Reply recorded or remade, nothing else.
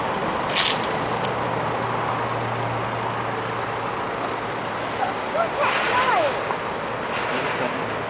recorded